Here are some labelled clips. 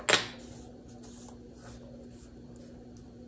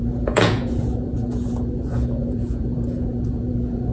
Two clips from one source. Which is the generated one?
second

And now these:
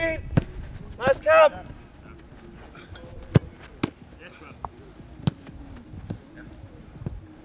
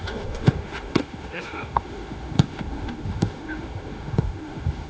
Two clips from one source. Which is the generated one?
second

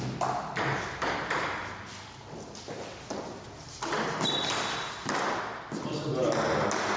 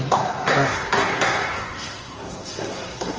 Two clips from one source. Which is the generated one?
second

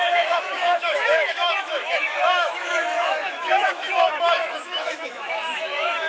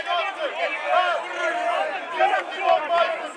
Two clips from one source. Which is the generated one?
first